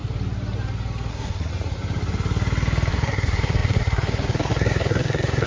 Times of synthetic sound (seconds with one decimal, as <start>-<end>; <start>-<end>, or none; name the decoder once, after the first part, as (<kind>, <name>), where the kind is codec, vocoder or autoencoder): 1.1-1.5 (codec, SNAC); 2.9-5.5